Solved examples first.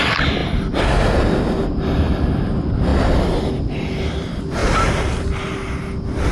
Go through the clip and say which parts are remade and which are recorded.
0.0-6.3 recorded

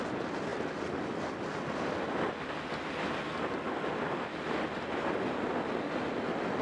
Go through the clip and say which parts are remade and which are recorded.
0.0-6.6 recorded

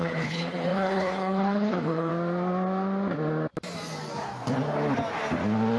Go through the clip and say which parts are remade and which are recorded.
0.0-2.1 remade; 2.1-5.8 recorded

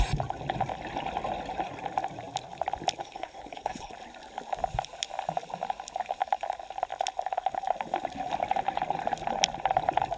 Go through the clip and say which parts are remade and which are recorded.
0.0-3.0 recorded; 3.0-3.9 remade; 3.9-10.2 recorded

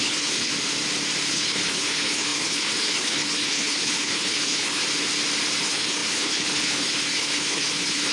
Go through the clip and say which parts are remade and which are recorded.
0.0-0.5 remade; 0.5-1.3 recorded; 1.3-4.8 remade; 4.8-5.6 recorded; 5.6-8.1 remade

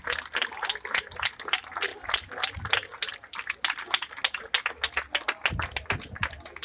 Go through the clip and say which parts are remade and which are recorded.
0.0-6.6 recorded

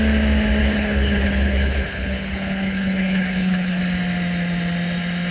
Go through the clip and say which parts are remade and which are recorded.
0.0-0.6 recorded; 0.6-3.8 remade; 3.8-5.3 recorded